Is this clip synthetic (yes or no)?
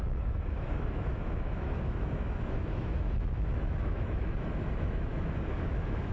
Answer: yes